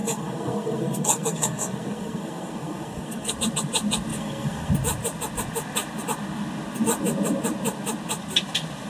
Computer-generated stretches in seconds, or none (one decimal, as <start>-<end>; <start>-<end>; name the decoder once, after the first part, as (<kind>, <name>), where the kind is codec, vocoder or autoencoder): 0.0-3.3 (codec, SNAC); 4.1-4.7